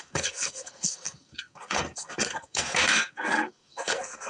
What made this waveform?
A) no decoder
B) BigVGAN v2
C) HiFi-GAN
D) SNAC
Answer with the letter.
D